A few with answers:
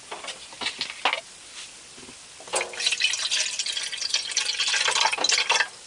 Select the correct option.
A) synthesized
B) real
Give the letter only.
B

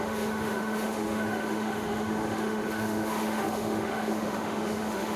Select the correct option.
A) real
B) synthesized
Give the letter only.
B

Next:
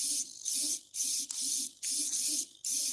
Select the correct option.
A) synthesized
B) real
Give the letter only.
B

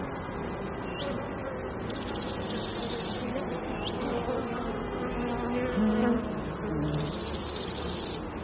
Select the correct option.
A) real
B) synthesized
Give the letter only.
A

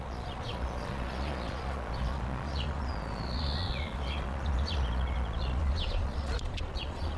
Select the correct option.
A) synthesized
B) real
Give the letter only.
A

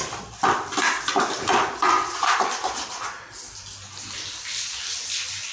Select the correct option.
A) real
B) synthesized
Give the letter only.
A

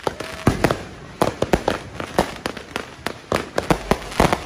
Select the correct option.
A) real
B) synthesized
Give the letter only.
A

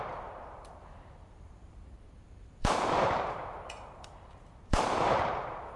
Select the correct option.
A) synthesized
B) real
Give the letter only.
A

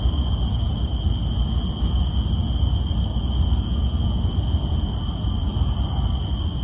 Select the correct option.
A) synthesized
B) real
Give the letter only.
B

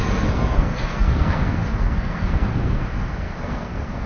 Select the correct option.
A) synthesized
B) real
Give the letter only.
A